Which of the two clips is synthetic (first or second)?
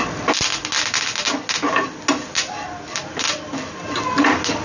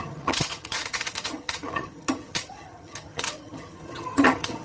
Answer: second